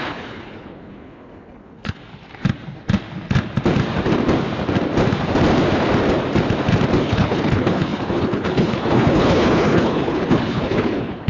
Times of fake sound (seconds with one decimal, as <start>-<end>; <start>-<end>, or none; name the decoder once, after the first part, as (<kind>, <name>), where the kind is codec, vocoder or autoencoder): 0.0-2.0 (codec, HILCodec); 7.0-11.3